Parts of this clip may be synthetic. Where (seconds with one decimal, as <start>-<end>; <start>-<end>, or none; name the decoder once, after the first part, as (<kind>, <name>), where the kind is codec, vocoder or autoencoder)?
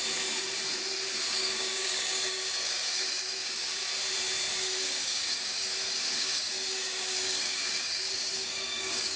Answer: 1.3-3.9 (codec, DAC); 4.5-9.2